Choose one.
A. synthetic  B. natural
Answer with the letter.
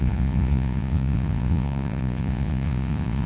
A